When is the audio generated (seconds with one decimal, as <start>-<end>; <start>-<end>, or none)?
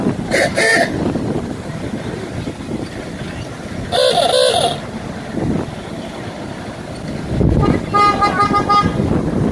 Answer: none